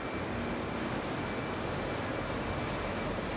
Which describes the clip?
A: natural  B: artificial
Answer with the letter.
A